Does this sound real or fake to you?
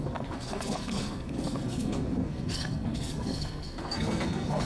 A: fake